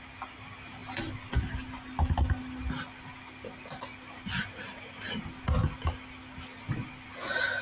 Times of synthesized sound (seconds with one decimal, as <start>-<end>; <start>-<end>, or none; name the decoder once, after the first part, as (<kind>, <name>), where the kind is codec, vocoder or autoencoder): none